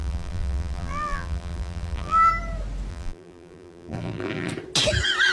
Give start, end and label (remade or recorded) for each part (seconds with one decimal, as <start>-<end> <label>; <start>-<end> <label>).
0.0-2.3 remade; 2.3-2.9 recorded; 2.9-4.5 remade; 4.5-5.3 recorded